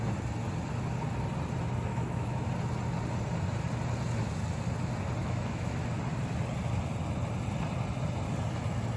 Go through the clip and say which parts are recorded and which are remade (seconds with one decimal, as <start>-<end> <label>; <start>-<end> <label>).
0.0-1.9 recorded; 1.9-2.5 remade; 2.5-5.2 recorded; 5.2-5.8 remade; 5.8-9.0 recorded